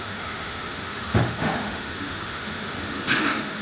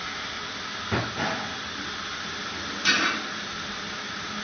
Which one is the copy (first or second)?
first